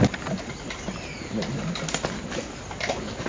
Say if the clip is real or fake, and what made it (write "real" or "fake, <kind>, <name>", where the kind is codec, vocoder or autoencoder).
real